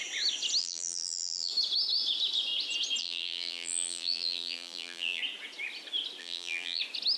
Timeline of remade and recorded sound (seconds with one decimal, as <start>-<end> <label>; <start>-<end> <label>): 0.0-0.6 recorded; 0.6-1.5 remade; 1.5-3.0 recorded; 3.0-5.2 remade; 5.2-6.2 recorded; 6.2-6.8 remade; 6.8-7.2 recorded